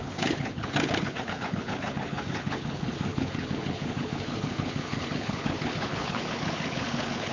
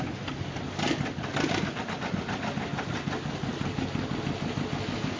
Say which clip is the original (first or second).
second